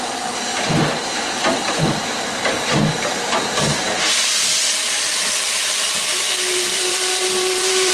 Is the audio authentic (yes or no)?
no